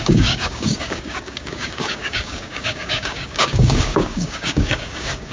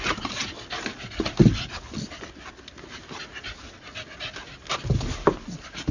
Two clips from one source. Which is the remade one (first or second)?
first